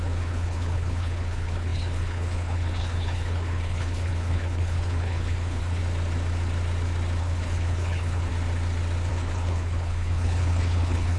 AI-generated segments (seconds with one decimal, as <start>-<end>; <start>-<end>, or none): 0.0-5.8; 7.2-8.3; 9.1-11.2